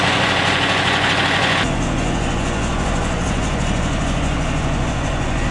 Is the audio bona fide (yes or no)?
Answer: no